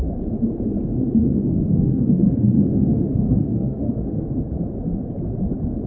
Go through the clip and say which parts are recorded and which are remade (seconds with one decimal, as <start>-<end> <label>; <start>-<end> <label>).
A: 0.0-1.2 recorded; 1.2-4.3 remade; 4.3-5.9 recorded